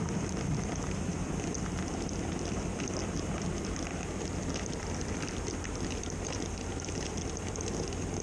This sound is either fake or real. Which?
fake